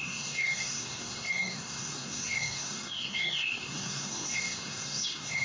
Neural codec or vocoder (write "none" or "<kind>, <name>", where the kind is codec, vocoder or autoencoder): codec, SNAC